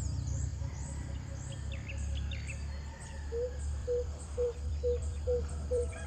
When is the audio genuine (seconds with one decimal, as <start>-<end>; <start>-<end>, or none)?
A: 0.0-3.8